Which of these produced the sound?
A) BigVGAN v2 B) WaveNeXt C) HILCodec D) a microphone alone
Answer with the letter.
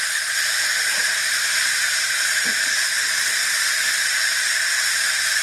A